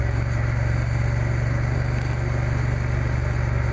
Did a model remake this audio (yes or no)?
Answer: no